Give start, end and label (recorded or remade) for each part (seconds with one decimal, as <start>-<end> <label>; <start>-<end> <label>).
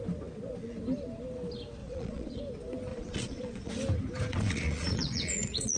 0.0-1.8 recorded; 1.8-2.4 remade; 2.4-2.9 recorded; 2.9-3.7 remade; 3.7-4.3 recorded; 4.3-5.8 remade